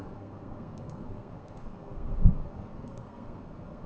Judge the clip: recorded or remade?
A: remade